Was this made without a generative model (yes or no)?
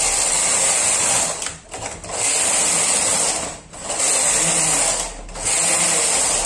yes